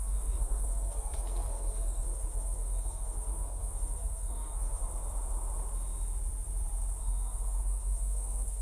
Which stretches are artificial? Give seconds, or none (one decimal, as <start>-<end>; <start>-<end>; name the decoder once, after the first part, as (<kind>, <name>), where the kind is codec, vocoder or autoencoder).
0.0-4.8 (codec, SNAC); 7.0-8.6